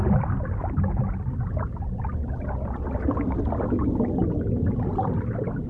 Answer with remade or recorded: recorded